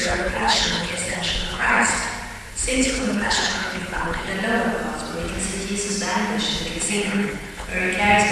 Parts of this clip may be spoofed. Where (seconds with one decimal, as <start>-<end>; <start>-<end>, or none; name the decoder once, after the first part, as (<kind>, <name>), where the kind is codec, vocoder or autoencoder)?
0.0-2.0 (codec, HILCodec); 2.5-4.3; 6.9-7.7

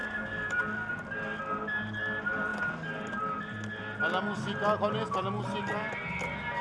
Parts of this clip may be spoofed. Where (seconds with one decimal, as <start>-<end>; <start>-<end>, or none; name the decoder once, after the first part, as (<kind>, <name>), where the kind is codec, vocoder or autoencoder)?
none